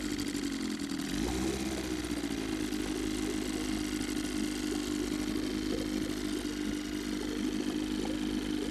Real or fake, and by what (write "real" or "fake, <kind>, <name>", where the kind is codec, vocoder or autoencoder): real